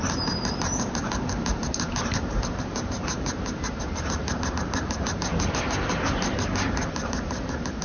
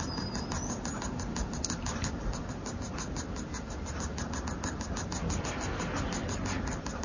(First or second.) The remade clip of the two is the first